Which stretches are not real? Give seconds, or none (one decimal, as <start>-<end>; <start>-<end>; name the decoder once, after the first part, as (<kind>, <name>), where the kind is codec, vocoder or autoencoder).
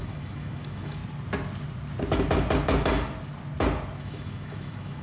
0.0-1.0 (autoencoder, DAC-VAE); 4.0-5.0